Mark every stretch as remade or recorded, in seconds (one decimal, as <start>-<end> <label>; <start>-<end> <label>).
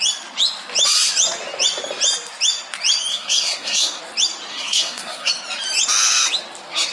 0.0-3.1 recorded; 3.1-4.0 remade; 4.0-4.5 recorded; 4.5-5.3 remade; 5.3-6.9 recorded